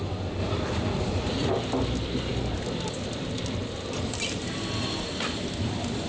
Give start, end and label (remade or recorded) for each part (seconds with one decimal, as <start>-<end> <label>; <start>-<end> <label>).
0.0-0.4 recorded; 0.4-1.5 remade; 1.5-6.1 recorded